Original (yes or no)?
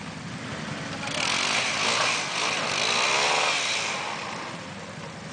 yes